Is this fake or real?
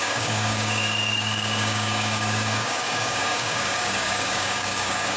fake